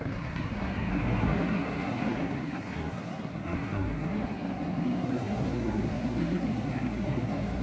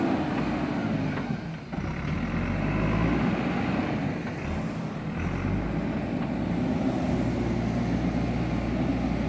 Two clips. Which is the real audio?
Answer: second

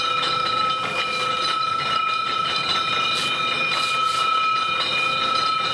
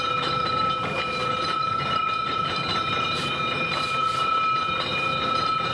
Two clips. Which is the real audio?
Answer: first